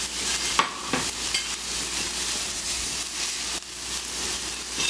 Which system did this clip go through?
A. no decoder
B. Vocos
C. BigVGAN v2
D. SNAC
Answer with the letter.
A